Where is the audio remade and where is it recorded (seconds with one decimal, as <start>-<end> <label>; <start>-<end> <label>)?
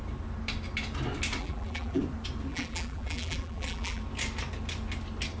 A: 0.0-1.4 recorded; 1.4-2.0 remade; 2.0-2.5 recorded; 2.5-4.0 remade; 4.0-5.4 recorded